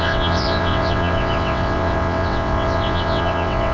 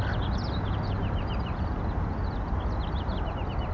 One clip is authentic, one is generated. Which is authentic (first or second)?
second